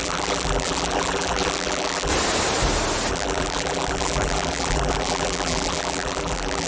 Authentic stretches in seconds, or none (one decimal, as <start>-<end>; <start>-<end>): 2.1-3.1